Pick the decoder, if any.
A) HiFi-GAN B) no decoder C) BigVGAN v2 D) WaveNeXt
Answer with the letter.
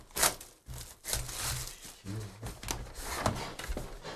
B